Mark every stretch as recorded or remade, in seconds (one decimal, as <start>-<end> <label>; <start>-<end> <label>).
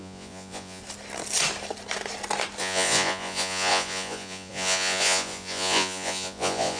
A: 0.0-0.8 remade; 0.8-2.6 recorded; 2.6-6.8 remade